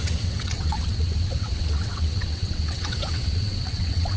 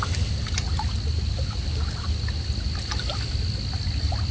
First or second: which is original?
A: second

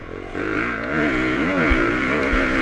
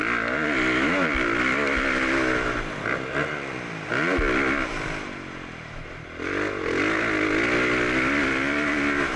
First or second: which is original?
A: second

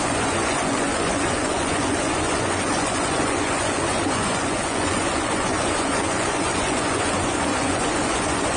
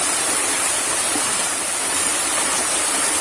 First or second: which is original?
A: second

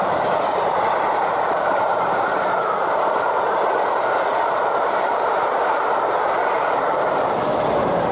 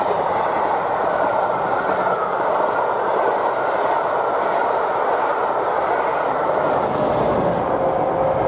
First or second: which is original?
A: second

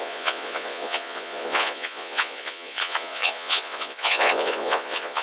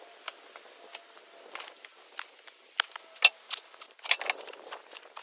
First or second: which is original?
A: second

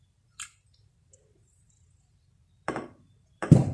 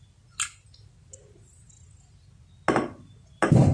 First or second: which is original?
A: second